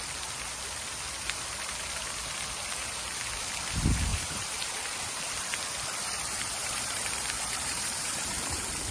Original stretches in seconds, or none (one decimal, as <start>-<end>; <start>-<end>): 0.0-4.1; 5.2-6.6; 8.4-8.9